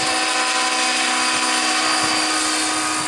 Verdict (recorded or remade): recorded